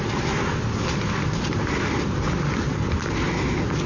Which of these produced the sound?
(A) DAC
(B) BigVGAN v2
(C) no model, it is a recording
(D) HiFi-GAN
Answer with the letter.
C